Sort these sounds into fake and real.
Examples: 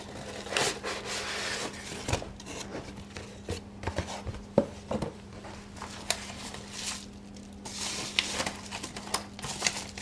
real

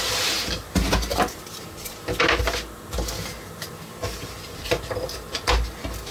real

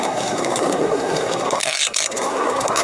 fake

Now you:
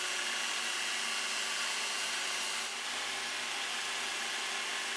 real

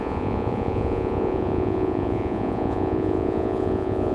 fake